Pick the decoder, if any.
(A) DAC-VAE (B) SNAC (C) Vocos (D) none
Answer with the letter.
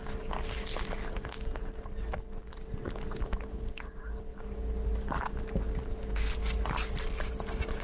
D